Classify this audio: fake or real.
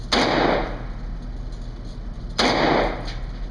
real